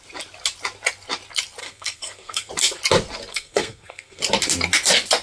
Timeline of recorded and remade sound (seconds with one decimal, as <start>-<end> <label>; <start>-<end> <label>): 0.0-1.6 recorded; 1.6-2.5 remade; 2.5-3.3 recorded; 3.3-4.2 remade; 4.2-5.2 recorded